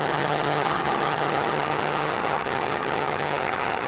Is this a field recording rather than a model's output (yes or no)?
no